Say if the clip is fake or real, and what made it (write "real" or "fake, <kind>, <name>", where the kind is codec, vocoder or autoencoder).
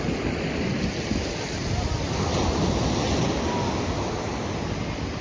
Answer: real